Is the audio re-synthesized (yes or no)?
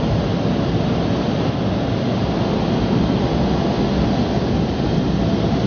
no